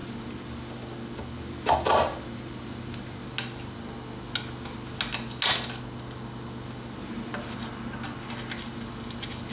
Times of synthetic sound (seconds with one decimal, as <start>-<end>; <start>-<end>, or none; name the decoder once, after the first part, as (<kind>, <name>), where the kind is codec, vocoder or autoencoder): none